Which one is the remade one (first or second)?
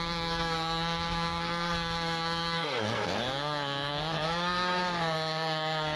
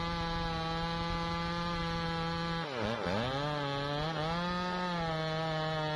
first